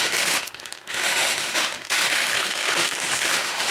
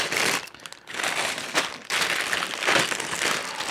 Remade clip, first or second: first